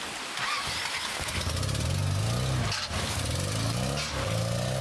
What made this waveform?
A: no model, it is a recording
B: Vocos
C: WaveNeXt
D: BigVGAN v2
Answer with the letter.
A